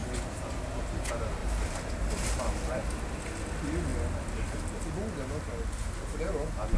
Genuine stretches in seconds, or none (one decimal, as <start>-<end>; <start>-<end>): 0.0-1.4; 3.0-3.9; 4.8-6.8